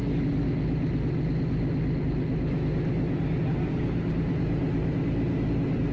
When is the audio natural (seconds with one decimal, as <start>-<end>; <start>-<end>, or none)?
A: 0.0-5.9